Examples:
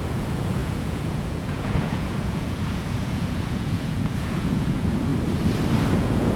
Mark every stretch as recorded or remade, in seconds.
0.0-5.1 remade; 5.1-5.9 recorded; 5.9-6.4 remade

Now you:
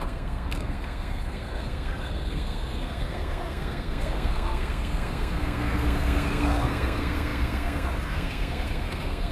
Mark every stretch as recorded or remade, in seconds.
0.0-9.3 remade

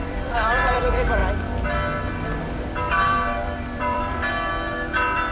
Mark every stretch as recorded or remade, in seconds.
0.0-1.2 remade; 1.2-2.9 recorded; 2.9-4.2 remade; 4.2-5.3 recorded

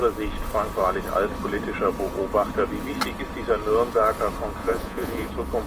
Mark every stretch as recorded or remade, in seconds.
0.0-4.6 recorded; 4.6-5.3 remade; 5.3-5.7 recorded

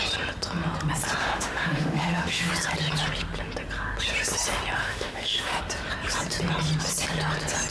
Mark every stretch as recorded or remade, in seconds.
0.0-1.2 recorded; 1.2-2.5 remade; 2.5-4.8 recorded; 4.8-5.6 remade; 5.6-7.7 recorded

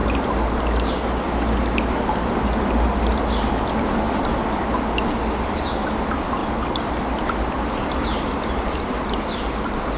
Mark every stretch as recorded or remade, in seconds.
0.0-10.0 recorded

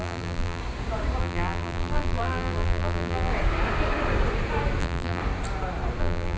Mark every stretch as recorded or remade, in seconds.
0.0-0.6 remade; 0.6-1.2 recorded; 1.2-3.3 remade; 3.3-4.8 recorded; 4.8-5.2 remade; 5.2-6.0 recorded; 6.0-6.4 remade

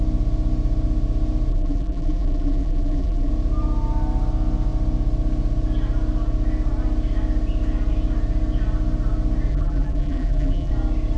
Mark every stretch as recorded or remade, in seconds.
0.0-1.5 recorded; 1.5-3.3 remade; 3.3-9.5 recorded; 9.5-10.7 remade; 10.7-11.2 recorded